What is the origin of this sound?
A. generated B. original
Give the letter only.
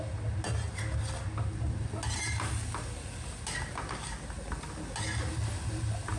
B